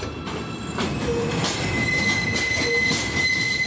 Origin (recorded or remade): recorded